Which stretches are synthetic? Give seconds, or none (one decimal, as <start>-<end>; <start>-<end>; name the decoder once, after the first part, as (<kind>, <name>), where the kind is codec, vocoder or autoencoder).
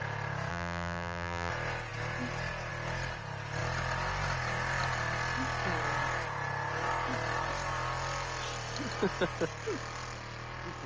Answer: 0.5-1.5 (vocoder, BigVGAN v2)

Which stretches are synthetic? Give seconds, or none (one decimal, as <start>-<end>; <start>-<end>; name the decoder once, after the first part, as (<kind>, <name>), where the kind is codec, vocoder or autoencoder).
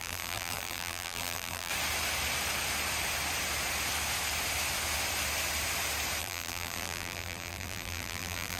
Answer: 0.0-1.7 (vocoder, BigVGAN v2); 6.2-8.6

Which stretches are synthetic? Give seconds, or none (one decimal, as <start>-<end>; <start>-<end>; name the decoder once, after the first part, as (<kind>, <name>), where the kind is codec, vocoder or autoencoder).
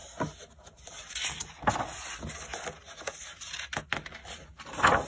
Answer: 4.2-5.1 (vocoder, BigVGAN v2)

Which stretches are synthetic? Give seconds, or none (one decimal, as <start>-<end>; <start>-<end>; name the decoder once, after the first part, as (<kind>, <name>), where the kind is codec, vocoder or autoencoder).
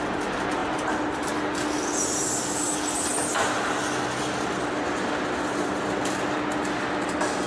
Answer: 0.6-1.3 (vocoder, BigVGAN v2)